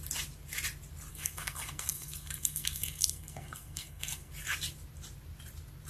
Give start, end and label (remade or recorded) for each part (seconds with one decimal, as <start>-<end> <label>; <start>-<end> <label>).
0.0-1.1 recorded; 1.1-4.3 remade; 4.3-5.9 recorded